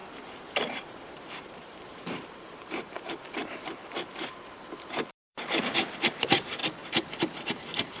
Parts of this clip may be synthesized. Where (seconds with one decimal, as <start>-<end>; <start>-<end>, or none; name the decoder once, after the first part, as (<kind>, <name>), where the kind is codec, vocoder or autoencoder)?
0.0-6.6 (vocoder, BigVGAN v2); 7.3-8.0